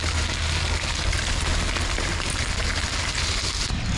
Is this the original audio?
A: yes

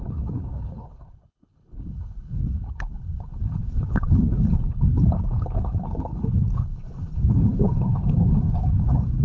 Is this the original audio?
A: no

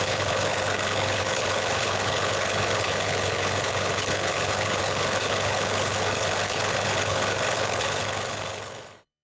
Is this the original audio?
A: no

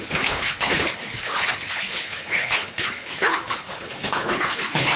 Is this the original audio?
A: no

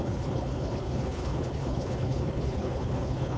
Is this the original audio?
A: no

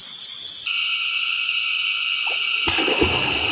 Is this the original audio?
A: yes